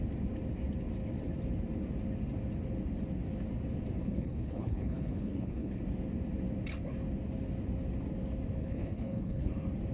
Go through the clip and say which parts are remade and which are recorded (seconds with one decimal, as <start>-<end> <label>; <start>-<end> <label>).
0.0-4.0 recorded; 4.0-5.8 remade; 5.8-8.6 recorded; 8.6-9.5 remade; 9.5-9.9 recorded